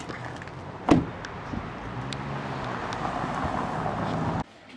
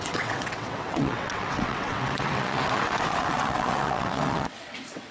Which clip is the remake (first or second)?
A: second